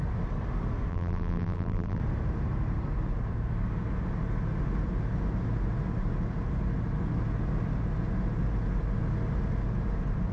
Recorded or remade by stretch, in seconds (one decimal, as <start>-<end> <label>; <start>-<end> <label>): 0.0-0.9 recorded; 0.9-2.0 remade; 2.0-10.3 recorded